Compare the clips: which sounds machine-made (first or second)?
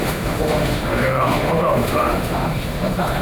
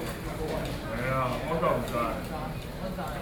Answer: first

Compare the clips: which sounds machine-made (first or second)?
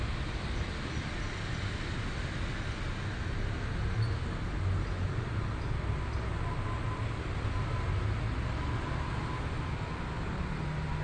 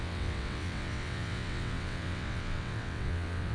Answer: second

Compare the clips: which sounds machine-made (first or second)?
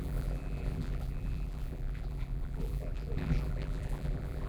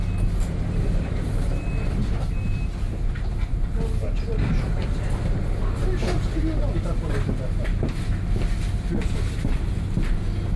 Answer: first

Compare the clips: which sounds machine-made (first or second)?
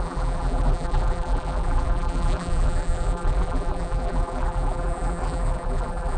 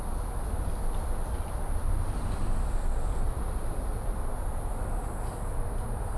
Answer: first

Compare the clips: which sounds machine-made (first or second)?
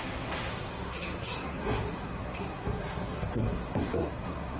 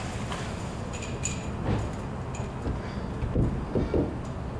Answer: first